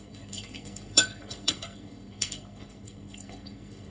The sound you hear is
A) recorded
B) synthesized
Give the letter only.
B